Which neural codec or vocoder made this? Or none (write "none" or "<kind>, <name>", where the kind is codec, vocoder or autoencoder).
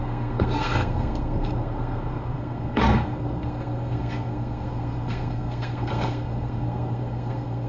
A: codec, SNAC